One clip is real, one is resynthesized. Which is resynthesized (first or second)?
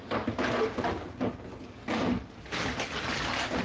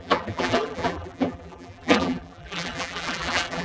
second